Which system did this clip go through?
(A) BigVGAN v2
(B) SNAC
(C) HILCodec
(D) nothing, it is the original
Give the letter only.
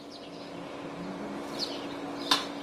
D